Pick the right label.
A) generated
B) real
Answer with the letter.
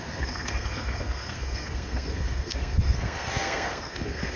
A